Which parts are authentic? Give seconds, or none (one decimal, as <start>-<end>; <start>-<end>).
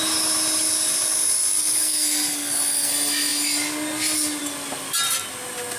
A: 0.0-1.6; 2.9-5.8